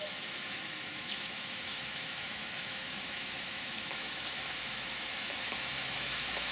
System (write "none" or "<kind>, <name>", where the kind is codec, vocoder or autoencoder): autoencoder, DAC-VAE